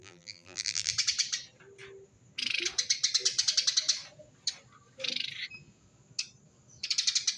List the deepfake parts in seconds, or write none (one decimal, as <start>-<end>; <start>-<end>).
0.0-0.9

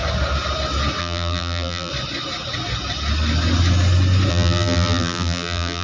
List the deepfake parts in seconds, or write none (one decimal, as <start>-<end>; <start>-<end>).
1.0-1.9; 4.3-5.8

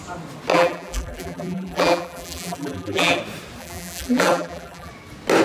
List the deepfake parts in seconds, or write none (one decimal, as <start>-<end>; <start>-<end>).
0.5-3.2; 3.6-4.9

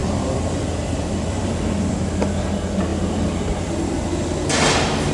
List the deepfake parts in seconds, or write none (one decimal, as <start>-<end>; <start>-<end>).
0.0-1.5

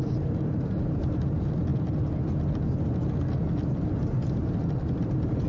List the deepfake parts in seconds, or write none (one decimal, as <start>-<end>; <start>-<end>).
0.0-1.7; 5.0-5.5